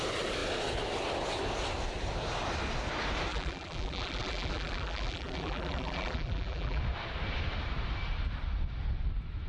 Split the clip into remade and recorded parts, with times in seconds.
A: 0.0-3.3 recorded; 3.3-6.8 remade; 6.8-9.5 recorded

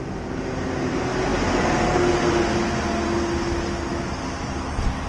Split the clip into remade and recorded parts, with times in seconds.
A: 0.0-5.1 recorded

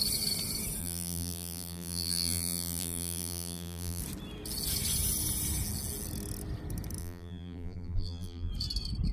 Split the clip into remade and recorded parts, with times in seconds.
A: 0.0-0.8 recorded; 0.8-4.0 remade; 4.0-7.0 recorded; 7.0-8.5 remade; 8.5-9.1 recorded

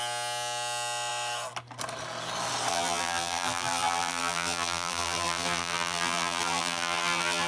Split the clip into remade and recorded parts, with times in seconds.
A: 0.0-2.7 recorded; 2.7-7.5 remade